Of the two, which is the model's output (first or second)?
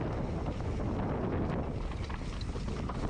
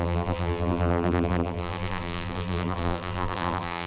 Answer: second